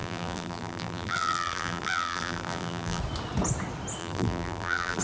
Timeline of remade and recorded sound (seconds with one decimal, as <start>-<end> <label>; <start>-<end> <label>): 0.0-3.0 remade; 3.0-4.0 recorded; 4.0-5.0 remade